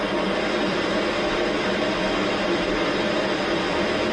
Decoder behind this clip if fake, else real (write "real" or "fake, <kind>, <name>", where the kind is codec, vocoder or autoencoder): fake, vocoder, BigVGAN v2